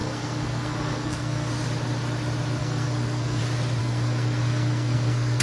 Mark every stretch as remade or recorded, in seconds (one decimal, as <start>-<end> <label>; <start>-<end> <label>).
0.0-1.5 remade; 1.5-2.6 recorded; 2.6-3.4 remade; 3.4-3.8 recorded; 3.8-5.4 remade